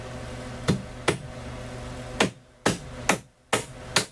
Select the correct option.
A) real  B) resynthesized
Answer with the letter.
A